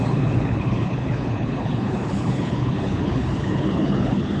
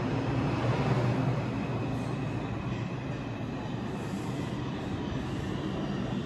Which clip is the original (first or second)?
second